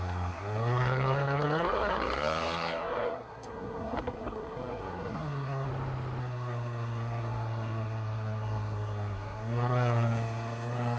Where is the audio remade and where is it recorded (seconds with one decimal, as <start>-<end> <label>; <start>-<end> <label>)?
0.0-5.7 remade; 5.7-6.2 recorded; 6.2-11.0 remade